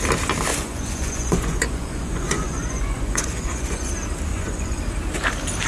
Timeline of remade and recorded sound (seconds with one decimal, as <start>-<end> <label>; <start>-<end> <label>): 0.0-0.5 recorded; 0.5-3.9 remade; 3.9-4.3 recorded; 4.3-4.8 remade; 4.8-5.7 recorded